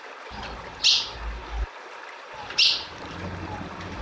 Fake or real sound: real